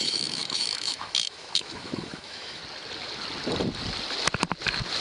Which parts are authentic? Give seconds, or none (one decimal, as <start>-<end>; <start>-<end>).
2.6-5.0